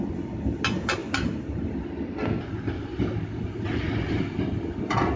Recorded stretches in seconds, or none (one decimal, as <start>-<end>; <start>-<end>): 0.0-5.2